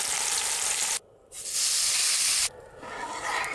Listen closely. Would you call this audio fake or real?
real